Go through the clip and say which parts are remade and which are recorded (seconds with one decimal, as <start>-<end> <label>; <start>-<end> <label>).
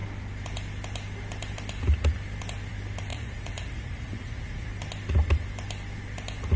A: 0.0-3.1 recorded; 3.1-4.7 remade; 4.7-6.6 recorded